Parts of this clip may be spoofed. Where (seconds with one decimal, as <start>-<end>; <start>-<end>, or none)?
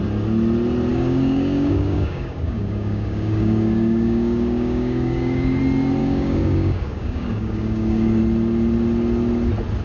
0.9-5.6; 6.0-8.2